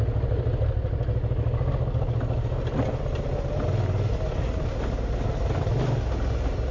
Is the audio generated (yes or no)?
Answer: no